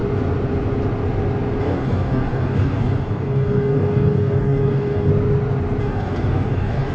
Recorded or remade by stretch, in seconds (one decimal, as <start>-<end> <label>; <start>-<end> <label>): 0.0-1.6 recorded; 1.6-5.1 remade; 5.1-5.8 recorded; 5.8-6.9 remade